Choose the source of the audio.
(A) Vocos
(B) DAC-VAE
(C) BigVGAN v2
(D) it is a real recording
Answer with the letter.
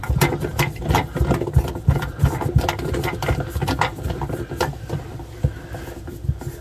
C